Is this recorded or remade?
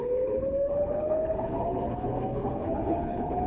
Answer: remade